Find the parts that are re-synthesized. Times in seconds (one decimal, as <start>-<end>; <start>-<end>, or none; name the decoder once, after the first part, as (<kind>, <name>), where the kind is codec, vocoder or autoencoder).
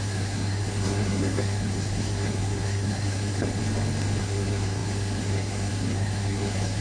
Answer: 0.0-3.6 (codec, SNAC); 4.2-6.8